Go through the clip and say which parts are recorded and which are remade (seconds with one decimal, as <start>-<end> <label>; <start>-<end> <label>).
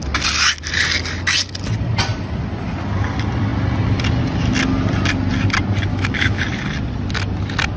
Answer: 0.0-5.9 recorded; 5.9-6.4 remade; 6.4-7.8 recorded